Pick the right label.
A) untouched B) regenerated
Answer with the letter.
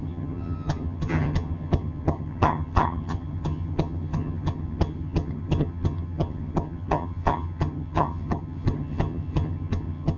B